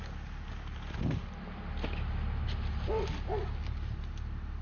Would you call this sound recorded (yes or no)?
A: yes